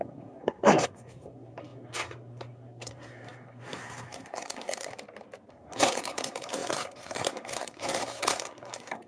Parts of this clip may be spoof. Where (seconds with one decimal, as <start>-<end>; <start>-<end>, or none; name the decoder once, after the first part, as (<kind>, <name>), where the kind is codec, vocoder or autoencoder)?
0.0-4.9 (codec, SNAC); 5.5-9.1